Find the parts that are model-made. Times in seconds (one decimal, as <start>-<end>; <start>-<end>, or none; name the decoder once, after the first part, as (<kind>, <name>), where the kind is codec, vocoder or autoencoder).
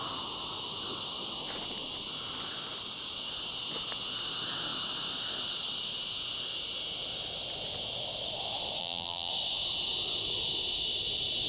8.8-9.3 (vocoder, BigVGAN v2)